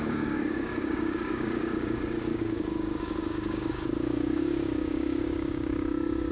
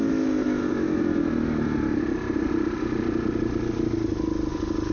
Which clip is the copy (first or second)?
first